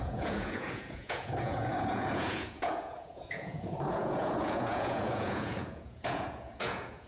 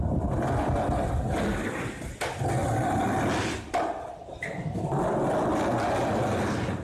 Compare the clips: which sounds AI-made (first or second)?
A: first